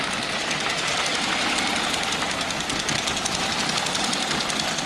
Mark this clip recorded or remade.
recorded